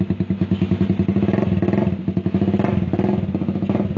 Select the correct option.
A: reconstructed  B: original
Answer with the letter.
B